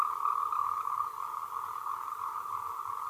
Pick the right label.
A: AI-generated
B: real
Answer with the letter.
B